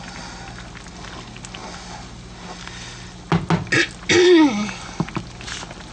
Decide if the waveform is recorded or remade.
recorded